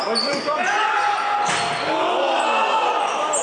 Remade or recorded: recorded